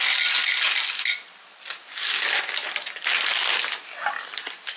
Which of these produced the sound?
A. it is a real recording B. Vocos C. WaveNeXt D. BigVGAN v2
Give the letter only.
A